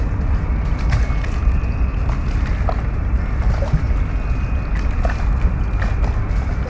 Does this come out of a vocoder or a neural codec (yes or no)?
no